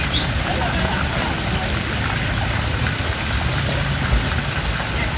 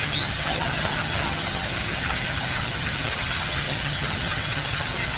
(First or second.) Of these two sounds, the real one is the first